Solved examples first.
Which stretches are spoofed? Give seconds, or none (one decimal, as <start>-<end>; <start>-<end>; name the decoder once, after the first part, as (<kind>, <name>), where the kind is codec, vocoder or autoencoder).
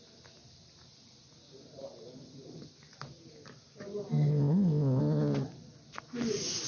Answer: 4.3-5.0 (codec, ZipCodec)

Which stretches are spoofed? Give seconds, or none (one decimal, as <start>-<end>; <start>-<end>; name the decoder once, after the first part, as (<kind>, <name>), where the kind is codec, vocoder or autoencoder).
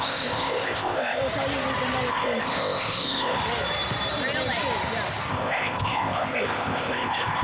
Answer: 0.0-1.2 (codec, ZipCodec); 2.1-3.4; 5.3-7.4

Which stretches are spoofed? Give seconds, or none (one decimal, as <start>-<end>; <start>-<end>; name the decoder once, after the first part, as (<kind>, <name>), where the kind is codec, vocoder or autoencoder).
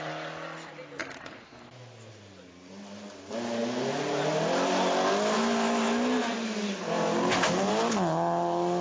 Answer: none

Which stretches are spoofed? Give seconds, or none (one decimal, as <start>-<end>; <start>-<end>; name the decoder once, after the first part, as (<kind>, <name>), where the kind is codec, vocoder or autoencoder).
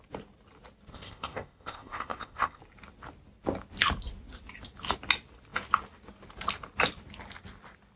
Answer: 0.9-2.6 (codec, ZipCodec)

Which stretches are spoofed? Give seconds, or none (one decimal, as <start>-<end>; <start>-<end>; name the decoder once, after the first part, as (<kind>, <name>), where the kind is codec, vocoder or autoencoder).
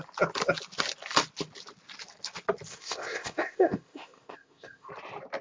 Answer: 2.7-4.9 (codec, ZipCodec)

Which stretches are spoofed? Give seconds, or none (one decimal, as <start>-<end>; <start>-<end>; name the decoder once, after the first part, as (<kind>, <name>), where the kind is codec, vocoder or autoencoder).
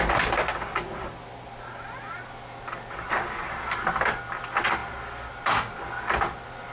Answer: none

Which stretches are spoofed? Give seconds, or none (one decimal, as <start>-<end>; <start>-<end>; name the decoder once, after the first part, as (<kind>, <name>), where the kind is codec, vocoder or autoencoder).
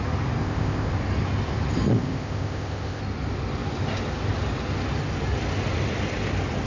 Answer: 0.4-0.9 (codec, ZipCodec); 1.9-3.0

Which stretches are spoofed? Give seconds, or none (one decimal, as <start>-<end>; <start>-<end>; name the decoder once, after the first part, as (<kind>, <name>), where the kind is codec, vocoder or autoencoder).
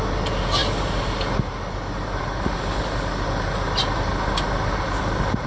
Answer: none